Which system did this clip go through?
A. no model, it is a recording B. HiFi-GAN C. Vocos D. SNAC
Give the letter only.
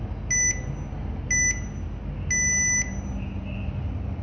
A